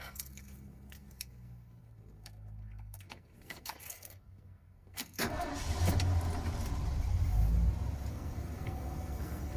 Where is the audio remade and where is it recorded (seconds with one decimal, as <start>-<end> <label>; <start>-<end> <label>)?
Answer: 0.0-5.5 remade; 5.5-8.1 recorded; 8.1-9.6 remade